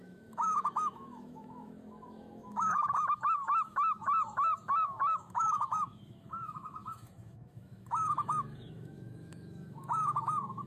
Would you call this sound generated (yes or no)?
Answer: yes